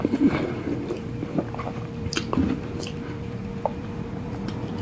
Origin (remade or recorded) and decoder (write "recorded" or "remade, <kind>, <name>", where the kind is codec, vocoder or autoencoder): remade, vocoder, BigVGAN v2